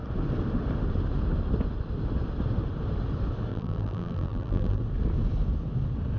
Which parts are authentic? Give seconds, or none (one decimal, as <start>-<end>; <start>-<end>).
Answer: 0.0-3.5; 4.8-6.2